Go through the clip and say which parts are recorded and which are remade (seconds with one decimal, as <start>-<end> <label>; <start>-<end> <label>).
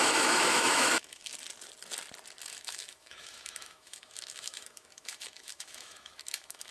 0.0-1.3 remade; 1.3-2.4 recorded; 2.4-6.7 remade